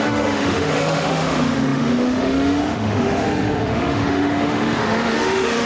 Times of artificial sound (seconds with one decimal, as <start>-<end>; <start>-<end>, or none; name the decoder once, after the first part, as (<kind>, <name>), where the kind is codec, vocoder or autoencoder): 0.0-5.7 (autoencoder, DAC-VAE)